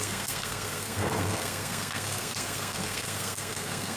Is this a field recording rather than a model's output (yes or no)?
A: no